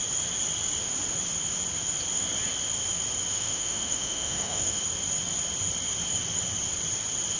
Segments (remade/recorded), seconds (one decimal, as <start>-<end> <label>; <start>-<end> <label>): 0.0-3.3 recorded; 3.3-4.8 remade; 4.8-7.4 recorded